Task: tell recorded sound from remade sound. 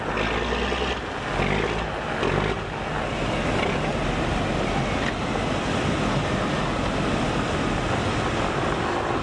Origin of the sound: recorded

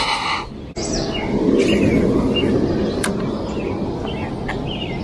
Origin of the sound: recorded